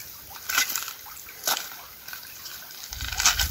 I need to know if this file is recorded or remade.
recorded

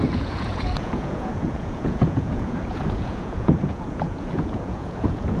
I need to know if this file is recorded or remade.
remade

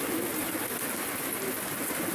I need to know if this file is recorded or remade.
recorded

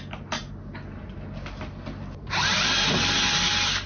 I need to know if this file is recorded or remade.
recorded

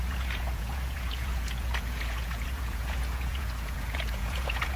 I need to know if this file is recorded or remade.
remade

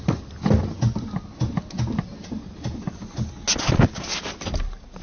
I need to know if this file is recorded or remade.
recorded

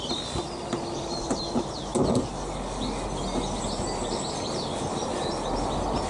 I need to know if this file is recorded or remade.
recorded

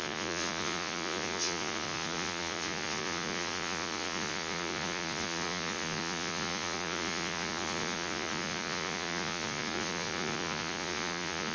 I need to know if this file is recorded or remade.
remade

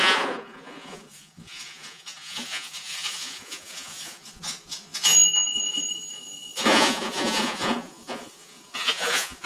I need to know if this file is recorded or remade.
remade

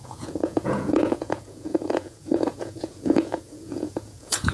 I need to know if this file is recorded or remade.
remade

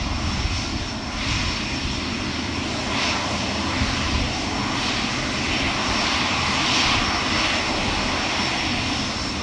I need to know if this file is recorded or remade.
recorded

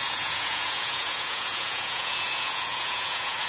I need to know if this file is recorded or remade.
remade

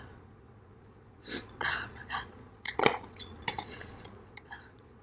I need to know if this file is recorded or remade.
remade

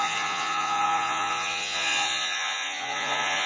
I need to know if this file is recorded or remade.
remade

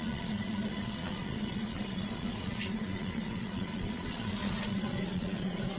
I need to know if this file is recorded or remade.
remade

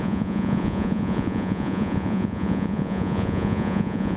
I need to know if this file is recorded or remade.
remade